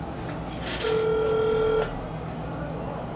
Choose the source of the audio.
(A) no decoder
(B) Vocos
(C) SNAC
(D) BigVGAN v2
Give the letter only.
A